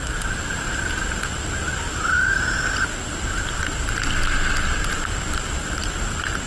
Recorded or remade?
recorded